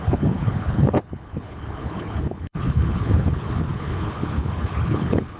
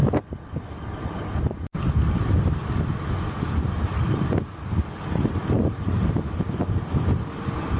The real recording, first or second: second